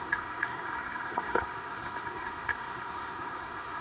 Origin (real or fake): fake